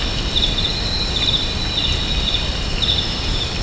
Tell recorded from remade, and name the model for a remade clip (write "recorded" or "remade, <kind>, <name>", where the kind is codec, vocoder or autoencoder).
recorded